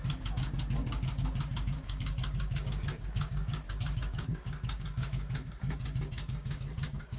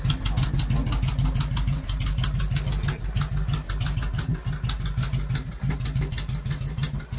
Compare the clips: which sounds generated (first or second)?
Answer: first